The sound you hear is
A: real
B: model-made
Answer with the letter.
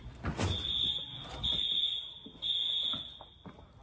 A